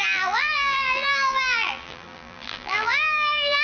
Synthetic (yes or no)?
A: yes